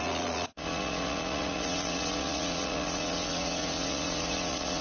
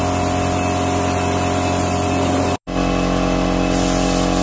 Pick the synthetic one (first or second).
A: first